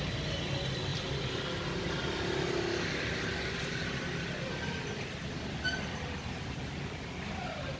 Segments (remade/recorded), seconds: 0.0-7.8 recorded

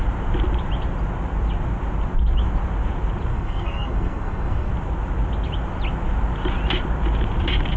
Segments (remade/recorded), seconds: 0.0-3.3 recorded; 3.3-4.7 remade; 4.7-7.8 recorded

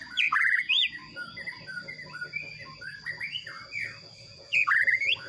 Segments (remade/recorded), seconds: 0.0-1.0 remade; 1.0-4.2 recorded; 4.2-5.3 remade

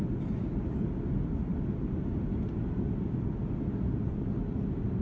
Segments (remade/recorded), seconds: 0.0-5.0 recorded

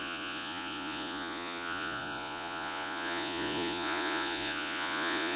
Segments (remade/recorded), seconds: 0.0-5.4 remade

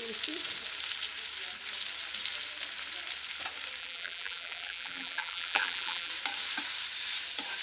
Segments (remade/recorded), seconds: 0.0-3.8 recorded; 3.8-6.1 remade; 6.1-7.6 recorded

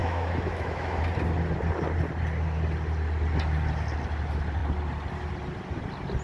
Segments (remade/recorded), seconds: 0.0-1.0 remade; 1.0-6.2 recorded

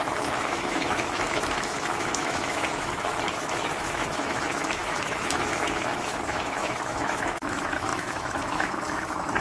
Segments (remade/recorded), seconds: 0.0-9.4 remade